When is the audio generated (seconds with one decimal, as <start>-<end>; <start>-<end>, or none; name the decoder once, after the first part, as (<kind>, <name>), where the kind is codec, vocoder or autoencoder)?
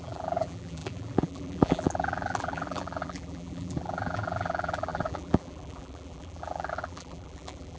0.0-7.8 (vocoder, BigVGAN v2)